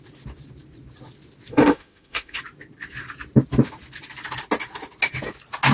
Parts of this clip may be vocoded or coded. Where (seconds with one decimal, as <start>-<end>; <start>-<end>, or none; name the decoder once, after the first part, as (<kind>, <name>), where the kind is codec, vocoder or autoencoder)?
1.5-2.4 (autoencoder, DAC-VAE)